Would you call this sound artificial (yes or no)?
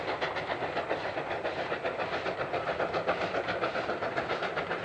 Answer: no